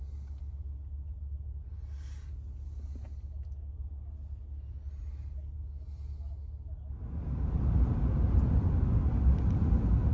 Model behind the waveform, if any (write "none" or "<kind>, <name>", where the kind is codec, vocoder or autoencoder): none